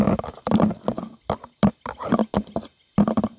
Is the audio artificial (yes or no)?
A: no